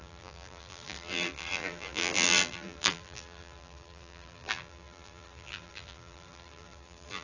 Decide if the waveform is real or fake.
fake